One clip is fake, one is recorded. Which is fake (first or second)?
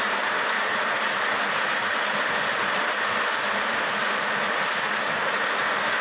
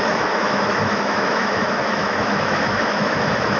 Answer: second